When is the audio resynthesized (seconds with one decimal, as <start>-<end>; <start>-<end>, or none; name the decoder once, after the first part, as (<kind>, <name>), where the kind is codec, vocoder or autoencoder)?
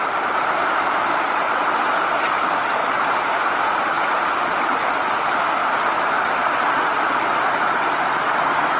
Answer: none